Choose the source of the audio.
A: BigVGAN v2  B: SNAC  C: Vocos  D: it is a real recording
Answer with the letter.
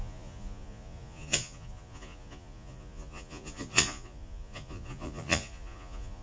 C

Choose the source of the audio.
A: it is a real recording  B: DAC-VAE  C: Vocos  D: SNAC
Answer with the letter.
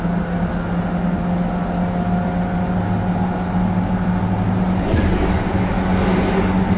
A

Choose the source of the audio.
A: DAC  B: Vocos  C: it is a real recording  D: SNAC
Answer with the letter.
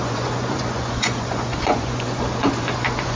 B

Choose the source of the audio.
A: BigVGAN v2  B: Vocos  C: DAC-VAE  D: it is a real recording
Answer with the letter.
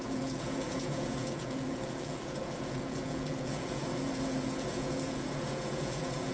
B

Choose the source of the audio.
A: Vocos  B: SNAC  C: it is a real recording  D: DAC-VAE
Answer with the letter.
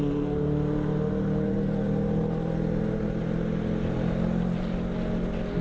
C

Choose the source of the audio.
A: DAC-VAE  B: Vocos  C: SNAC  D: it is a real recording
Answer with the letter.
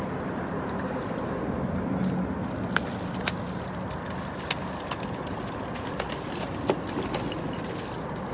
D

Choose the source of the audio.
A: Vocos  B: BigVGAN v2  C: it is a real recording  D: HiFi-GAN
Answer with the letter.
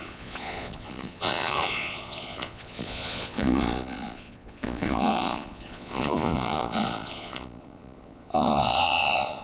A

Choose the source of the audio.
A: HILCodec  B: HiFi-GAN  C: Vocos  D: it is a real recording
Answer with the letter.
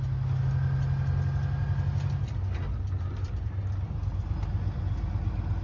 D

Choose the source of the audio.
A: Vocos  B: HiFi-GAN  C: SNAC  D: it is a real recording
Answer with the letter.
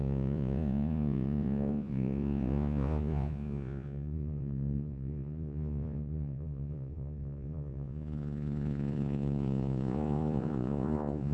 A